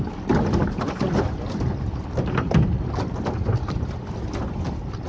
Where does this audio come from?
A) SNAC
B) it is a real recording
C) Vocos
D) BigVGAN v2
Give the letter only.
B